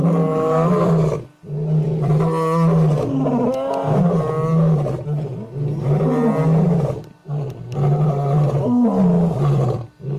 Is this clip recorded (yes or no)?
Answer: yes